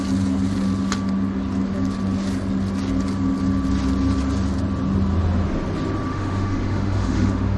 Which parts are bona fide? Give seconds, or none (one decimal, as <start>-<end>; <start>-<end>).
0.0-6.1